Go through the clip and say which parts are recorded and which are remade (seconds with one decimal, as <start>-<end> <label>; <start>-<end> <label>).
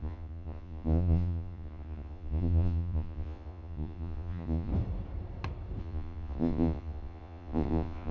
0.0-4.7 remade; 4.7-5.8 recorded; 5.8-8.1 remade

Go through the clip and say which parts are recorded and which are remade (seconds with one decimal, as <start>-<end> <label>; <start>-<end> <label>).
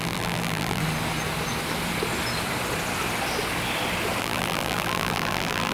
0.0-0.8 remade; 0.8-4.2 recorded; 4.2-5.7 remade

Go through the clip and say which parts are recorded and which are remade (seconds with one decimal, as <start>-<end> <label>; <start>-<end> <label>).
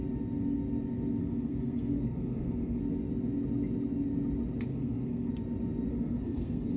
0.0-1.2 recorded; 1.2-2.8 remade; 2.8-4.7 recorded; 4.7-5.3 remade; 5.3-5.9 recorded; 5.9-6.8 remade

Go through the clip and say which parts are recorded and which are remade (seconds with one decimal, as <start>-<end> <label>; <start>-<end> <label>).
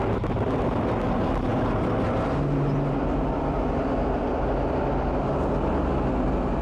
0.0-6.6 recorded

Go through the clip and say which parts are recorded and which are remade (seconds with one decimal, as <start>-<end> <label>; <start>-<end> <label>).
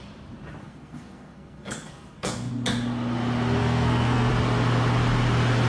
0.0-0.6 recorded; 0.6-2.5 remade; 2.5-3.6 recorded; 3.6-4.3 remade; 4.3-5.7 recorded